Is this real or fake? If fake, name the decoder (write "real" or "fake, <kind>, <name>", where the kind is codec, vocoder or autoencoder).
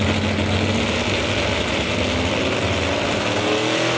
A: real